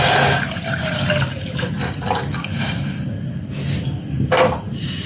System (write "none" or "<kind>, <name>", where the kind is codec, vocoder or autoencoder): none